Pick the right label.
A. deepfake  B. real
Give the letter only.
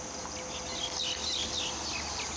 B